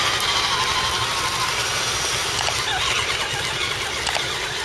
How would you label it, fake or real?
real